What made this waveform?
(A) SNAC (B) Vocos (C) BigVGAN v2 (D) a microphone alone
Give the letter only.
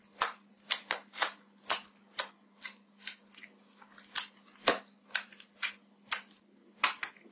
D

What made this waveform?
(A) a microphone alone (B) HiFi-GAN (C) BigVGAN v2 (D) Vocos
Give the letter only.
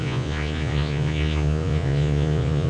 D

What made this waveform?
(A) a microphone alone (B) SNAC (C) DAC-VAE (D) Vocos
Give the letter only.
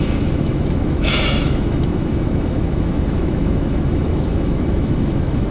C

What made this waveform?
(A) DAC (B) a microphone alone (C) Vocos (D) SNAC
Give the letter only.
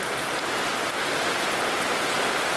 B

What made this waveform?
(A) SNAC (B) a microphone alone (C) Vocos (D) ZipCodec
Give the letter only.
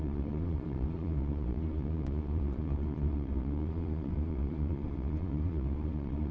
C